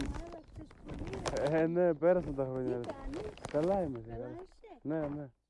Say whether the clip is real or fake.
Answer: real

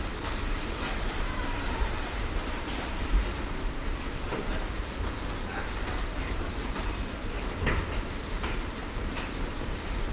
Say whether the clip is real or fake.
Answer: fake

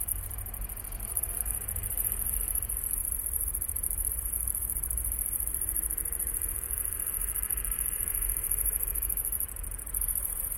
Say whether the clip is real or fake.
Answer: fake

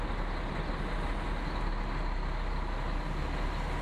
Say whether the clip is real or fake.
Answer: real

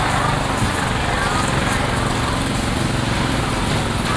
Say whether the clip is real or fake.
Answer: real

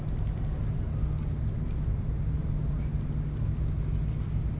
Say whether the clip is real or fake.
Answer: real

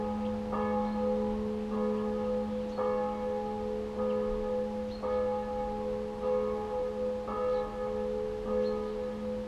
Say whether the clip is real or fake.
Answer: real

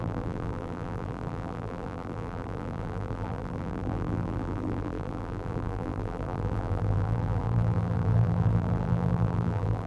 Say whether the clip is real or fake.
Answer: fake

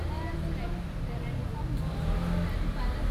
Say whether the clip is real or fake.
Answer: real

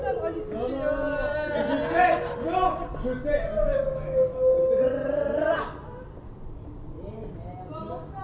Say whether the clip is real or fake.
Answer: real